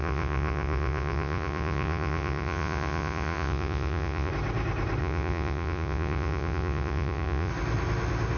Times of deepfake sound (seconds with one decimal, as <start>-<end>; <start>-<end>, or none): 0.0-4.3; 5.0-7.5